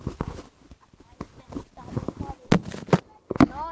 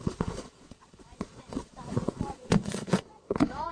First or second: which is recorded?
first